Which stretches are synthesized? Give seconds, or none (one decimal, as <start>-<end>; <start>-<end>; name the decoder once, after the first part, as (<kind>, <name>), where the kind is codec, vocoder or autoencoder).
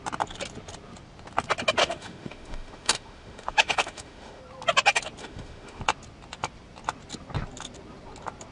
1.8-4.4 (autoencoder, DAC-VAE); 5.2-5.8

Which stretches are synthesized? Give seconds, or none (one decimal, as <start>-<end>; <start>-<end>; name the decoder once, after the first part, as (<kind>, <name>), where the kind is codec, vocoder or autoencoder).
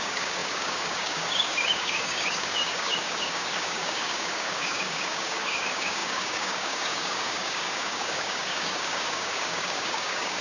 0.0-10.4 (codec, DAC)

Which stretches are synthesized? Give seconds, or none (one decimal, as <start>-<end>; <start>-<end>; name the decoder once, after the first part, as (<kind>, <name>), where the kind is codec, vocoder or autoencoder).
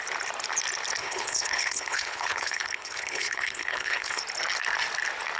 1.0-4.2 (codec, HILCodec)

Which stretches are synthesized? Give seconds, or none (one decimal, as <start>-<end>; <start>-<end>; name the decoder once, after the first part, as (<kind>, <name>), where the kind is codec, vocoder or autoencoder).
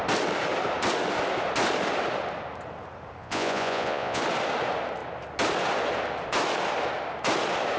3.2-4.2 (vocoder, Vocos)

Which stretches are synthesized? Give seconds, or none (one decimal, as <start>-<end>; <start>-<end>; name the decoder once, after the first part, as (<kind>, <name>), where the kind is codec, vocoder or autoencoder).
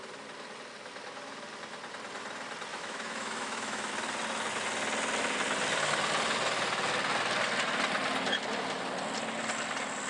2.7-3.9 (autoencoder, DAC-VAE)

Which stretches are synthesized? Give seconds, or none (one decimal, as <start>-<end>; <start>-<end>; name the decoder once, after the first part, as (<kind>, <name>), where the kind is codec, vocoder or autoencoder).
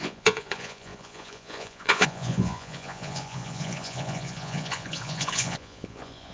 0.0-6.3 (vocoder, Vocos)